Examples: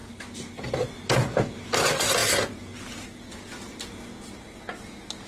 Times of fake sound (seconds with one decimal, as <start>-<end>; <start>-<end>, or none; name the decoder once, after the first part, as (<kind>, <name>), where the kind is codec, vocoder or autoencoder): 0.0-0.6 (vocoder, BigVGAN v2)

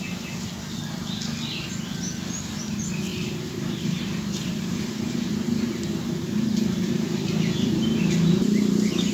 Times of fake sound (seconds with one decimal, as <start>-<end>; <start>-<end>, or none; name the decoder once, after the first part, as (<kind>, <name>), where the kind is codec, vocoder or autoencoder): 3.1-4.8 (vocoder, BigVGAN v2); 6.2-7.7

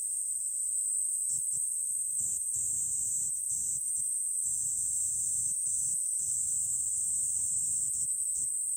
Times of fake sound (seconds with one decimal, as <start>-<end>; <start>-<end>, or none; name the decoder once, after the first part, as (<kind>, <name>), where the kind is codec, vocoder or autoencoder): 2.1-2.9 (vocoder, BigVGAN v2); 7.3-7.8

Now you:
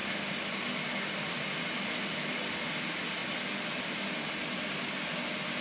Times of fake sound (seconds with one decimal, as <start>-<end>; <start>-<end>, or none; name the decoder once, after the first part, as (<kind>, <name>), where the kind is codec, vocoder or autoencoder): none

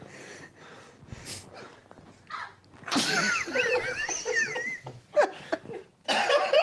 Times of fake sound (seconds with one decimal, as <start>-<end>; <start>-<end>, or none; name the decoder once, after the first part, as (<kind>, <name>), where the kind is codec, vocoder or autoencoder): 5.1-6.6 (vocoder, BigVGAN v2)